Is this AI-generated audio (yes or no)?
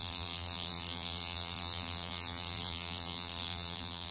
yes